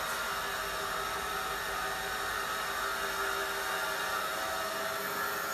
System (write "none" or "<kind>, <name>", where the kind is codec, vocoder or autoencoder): none